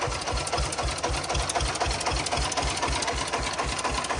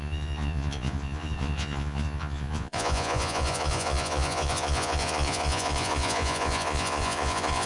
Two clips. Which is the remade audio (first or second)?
second